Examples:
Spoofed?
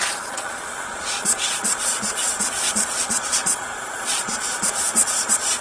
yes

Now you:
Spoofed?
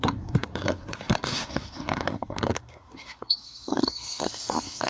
yes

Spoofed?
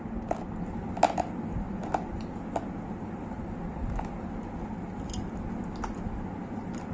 no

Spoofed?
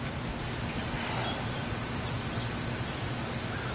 no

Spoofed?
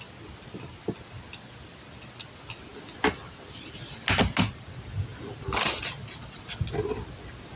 no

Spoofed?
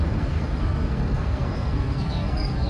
yes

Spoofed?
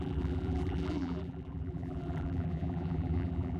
yes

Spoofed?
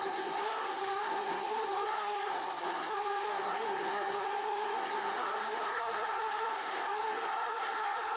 yes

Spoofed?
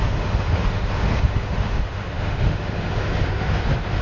yes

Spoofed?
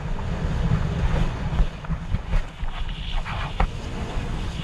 yes